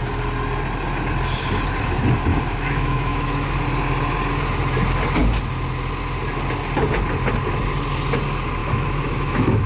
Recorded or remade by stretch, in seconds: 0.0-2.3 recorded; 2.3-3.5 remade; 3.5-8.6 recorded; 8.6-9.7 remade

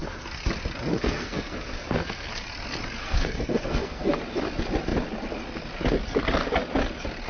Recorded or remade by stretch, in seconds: 0.0-0.9 recorded; 0.9-2.3 remade; 2.3-3.0 recorded; 3.0-4.2 remade; 4.2-7.3 recorded

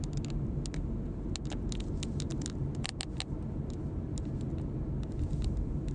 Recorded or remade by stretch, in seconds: 0.0-5.9 recorded

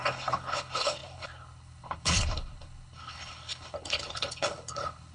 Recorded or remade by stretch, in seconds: 0.0-5.1 remade

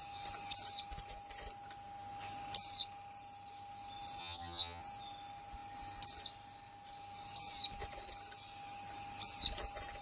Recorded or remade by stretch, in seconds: 0.0-4.2 recorded; 4.2-4.8 remade; 4.8-10.0 recorded

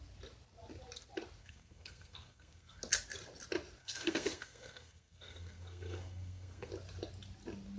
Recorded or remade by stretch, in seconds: 0.0-1.4 recorded; 1.4-2.8 remade; 2.8-3.8 recorded; 3.8-6.7 remade; 6.7-7.8 recorded

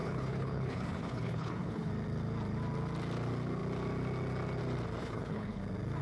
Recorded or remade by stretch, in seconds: 0.0-1.9 remade; 1.9-5.0 recorded; 5.0-5.6 remade; 5.6-6.0 recorded